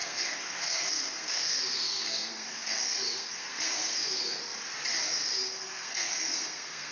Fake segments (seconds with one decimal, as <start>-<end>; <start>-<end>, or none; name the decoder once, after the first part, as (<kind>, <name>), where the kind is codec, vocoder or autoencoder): 0.0-4.4 (codec, SNAC); 5.0-6.9